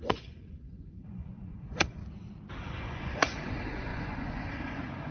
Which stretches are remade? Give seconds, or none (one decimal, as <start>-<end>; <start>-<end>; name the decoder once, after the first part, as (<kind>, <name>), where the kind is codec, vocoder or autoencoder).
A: 0.0-2.0 (vocoder, Vocos); 2.6-5.1